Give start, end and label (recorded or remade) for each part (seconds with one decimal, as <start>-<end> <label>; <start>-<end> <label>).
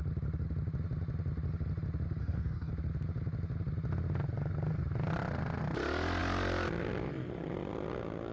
0.0-2.2 recorded; 2.2-2.7 remade; 2.7-8.3 recorded